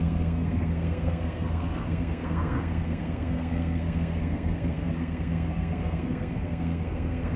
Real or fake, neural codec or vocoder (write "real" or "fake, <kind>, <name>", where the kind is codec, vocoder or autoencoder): fake, codec, SNAC